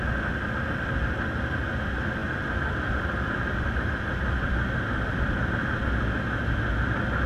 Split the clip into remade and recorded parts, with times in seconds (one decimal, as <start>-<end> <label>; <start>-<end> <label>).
0.0-2.2 recorded; 2.2-5.8 remade; 5.8-7.3 recorded